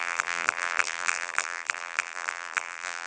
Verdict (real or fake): fake